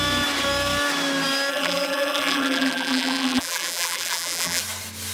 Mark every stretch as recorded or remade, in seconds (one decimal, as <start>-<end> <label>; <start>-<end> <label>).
0.0-1.5 recorded; 1.5-4.6 remade; 4.6-5.1 recorded